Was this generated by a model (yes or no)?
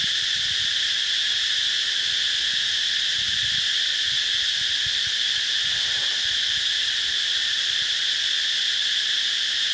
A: no